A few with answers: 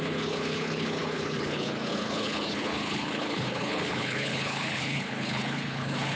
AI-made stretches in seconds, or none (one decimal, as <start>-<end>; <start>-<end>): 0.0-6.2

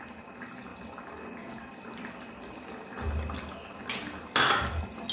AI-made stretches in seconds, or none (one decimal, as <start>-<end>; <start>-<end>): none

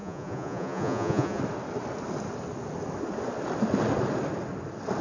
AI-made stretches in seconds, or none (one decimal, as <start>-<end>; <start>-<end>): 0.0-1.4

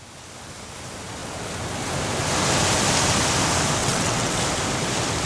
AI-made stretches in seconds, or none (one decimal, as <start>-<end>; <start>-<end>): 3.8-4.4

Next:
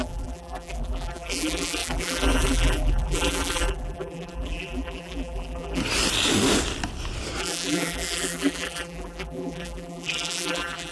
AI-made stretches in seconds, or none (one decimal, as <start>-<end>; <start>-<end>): 0.0-5.8; 7.4-10.9

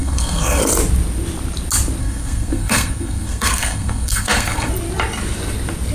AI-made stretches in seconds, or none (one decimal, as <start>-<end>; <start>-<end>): 0.0-0.6; 2.0-4.7